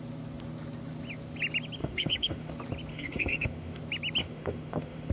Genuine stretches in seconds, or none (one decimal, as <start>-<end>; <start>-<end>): 0.0-1.8; 2.5-2.9; 3.8-4.2